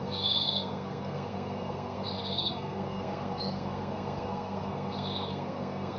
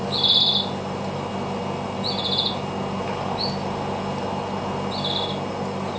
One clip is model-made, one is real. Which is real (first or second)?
second